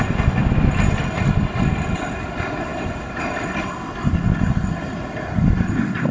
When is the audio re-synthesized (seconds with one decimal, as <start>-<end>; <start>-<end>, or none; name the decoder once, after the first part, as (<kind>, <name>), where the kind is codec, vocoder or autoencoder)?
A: none